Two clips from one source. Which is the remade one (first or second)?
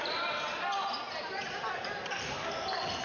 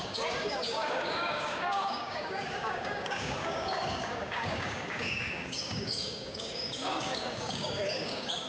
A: second